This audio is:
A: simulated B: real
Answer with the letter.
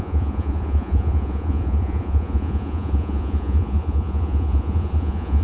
A